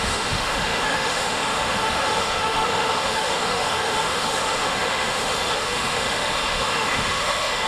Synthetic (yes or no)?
yes